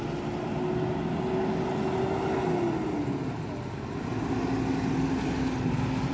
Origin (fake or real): real